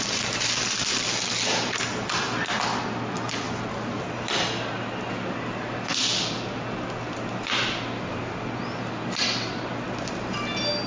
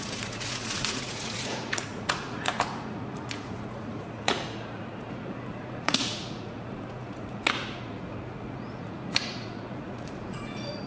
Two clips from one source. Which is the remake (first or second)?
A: second